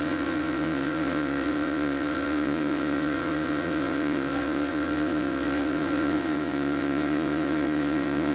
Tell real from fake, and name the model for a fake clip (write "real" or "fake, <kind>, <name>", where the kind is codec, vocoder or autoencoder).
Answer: fake, vocoder, WaveNeXt